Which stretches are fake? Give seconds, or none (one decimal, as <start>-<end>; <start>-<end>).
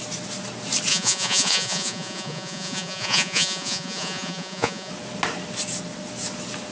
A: 0.9-4.9